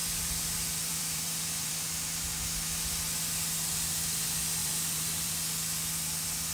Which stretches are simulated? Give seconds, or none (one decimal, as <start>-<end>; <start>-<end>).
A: 0.0-1.8; 4.6-5.3